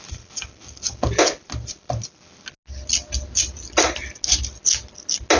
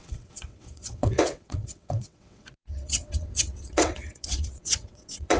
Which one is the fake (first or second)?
second